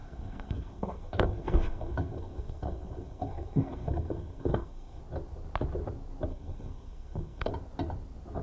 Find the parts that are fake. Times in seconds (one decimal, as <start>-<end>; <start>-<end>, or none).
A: 0.0-5.0; 6.3-7.5